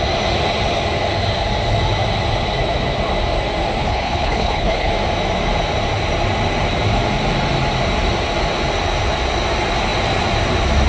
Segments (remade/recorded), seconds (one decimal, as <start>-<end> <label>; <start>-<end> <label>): 0.0-3.8 recorded; 3.8-4.9 remade; 4.9-10.9 recorded